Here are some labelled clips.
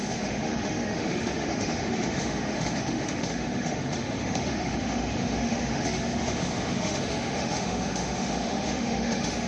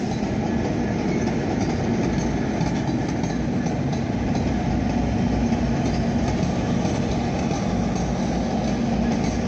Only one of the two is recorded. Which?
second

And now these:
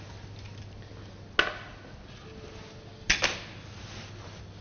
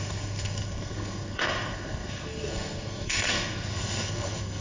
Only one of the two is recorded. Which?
first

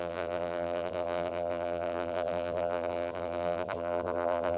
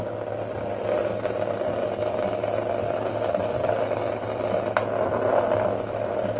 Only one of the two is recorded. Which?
second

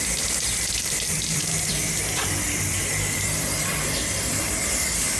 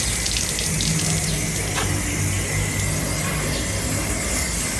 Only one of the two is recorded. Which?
second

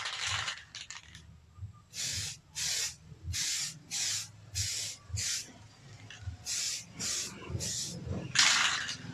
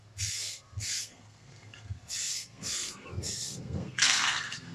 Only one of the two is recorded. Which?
first